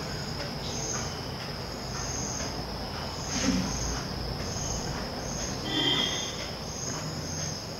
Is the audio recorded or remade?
recorded